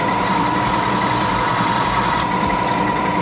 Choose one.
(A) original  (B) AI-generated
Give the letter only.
B